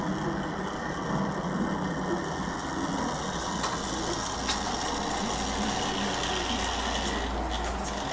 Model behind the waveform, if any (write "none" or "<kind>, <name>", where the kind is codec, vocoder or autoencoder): none